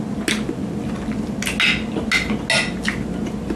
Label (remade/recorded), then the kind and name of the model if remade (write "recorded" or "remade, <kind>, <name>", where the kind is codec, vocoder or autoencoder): recorded